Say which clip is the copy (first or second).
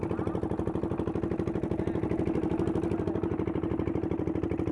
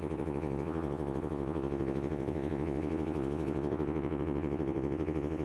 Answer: second